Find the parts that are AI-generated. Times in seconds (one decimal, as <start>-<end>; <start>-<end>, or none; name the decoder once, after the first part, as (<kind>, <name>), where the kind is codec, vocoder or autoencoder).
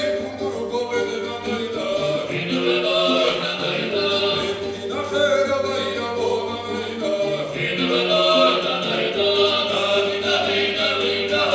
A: 0.8-1.6 (codec, DAC); 3.0-4.2; 10.8-11.5